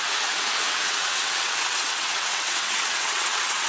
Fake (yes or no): yes